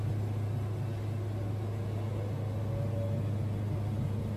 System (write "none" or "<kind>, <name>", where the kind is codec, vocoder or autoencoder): none